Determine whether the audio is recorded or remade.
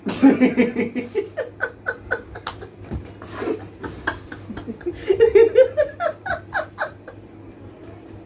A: recorded